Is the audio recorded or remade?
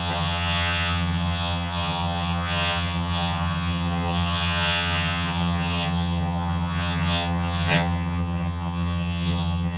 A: remade